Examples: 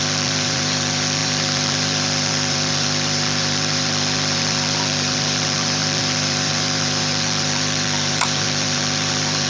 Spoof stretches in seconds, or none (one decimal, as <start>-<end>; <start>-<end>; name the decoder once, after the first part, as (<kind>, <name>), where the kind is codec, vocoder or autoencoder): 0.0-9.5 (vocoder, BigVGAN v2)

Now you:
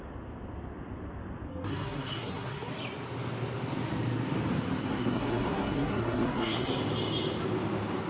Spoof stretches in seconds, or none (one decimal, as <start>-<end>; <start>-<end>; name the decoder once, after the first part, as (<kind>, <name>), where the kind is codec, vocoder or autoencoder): 1.5-2.7 (codec, SNAC); 4.8-6.8

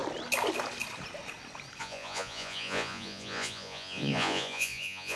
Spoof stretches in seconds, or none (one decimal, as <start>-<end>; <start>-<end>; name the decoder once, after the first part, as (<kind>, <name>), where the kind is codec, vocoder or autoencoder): 1.8-5.2 (vocoder, Vocos)

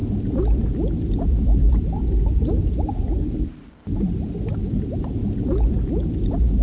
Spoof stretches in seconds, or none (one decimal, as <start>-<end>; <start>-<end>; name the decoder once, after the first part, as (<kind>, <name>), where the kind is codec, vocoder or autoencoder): 0.0-3.2 (vocoder, BigVGAN v2); 4.5-6.0

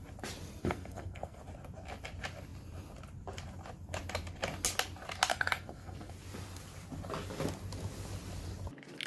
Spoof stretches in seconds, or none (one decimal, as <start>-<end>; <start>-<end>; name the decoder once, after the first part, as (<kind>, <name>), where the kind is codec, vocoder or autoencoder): 0.6-1.4 (codec, SNAC); 5.3-6.1

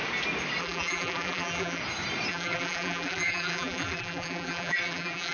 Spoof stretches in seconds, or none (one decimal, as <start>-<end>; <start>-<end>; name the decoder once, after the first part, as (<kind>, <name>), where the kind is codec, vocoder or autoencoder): 0.6-1.8 (vocoder, BigVGAN v2); 2.3-5.3